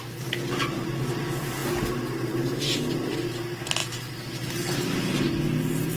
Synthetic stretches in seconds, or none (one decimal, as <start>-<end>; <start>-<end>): 3.8-4.7